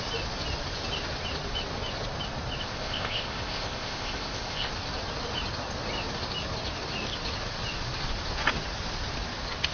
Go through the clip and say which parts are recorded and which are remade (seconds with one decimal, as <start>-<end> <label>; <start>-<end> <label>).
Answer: 0.0-2.6 recorded; 2.6-4.7 remade; 4.7-9.7 recorded